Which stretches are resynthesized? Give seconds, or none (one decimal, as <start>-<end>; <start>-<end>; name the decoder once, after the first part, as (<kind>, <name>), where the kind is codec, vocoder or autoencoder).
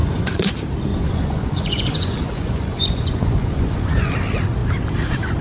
0.0-0.5 (vocoder, Vocos); 0.9-4.1